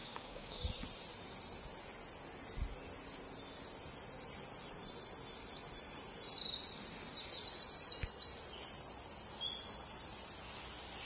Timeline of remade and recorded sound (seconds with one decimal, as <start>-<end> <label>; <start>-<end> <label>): 0.0-0.6 remade; 0.6-11.0 recorded